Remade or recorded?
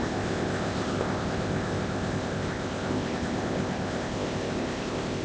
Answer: remade